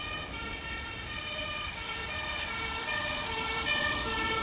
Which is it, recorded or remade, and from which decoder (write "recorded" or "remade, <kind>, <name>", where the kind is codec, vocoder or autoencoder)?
remade, vocoder, BigVGAN v2